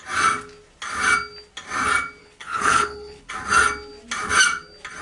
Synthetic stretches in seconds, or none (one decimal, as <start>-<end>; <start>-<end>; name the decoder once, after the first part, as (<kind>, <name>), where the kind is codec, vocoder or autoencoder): 2.2-3.3 (codec, HILCodec)